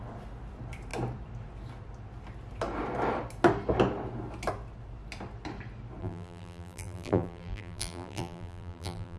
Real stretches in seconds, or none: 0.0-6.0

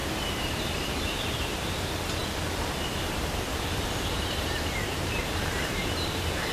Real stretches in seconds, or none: 2.2-2.9